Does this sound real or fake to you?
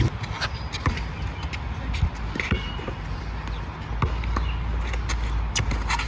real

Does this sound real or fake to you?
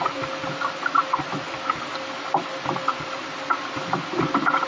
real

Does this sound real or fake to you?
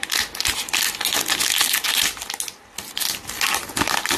real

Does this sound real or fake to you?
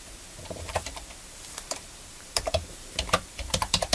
fake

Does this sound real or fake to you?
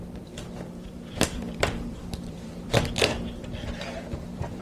fake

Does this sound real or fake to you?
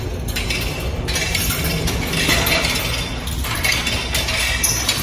real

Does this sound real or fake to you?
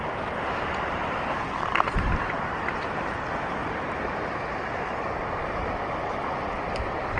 real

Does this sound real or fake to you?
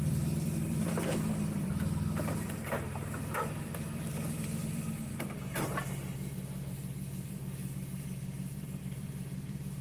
fake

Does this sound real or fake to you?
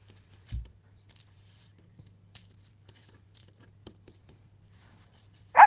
fake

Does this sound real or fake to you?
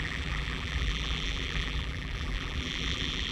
fake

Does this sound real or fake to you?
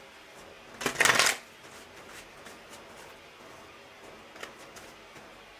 real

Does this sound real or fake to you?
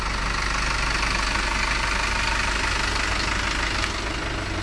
real